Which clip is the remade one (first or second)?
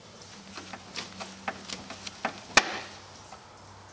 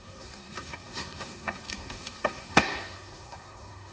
second